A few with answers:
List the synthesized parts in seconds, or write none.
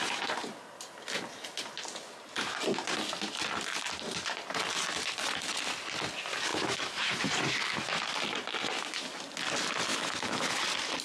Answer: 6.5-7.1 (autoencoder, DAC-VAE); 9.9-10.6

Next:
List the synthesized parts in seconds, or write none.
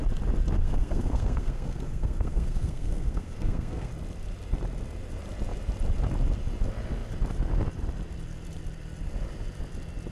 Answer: 0.6-3.9 (codec, SNAC)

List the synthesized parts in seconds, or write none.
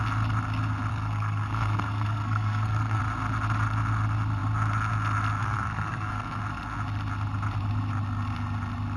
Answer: 0.9-3.0 (codec, SNAC); 5.4-6.4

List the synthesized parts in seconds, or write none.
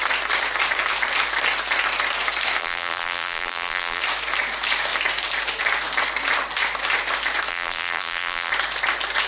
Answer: 2.6-4.0 (vocoder, BigVGAN v2); 7.5-8.5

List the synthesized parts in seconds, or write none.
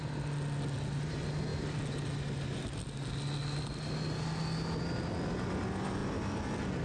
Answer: none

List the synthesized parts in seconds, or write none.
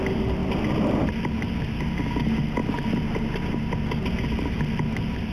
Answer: 0.4-1.1 (vocoder, BigVGAN v2)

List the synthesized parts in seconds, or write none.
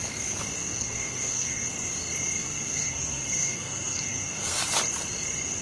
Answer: 0.6-1.7 (codec, SNAC); 2.4-4.6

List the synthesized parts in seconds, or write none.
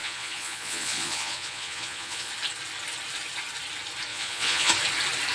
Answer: 0.0-2.3 (vocoder, Vocos); 4.1-4.7